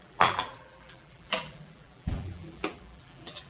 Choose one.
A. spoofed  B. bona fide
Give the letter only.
A